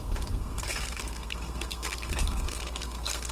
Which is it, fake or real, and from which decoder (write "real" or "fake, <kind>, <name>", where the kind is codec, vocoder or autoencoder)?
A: fake, codec, SNAC